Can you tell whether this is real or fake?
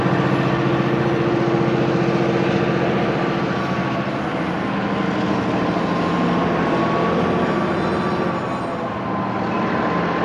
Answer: real